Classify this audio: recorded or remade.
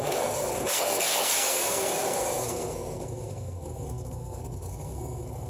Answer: remade